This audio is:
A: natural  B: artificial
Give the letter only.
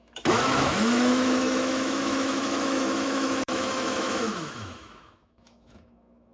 B